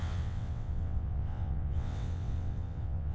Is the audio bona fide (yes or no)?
no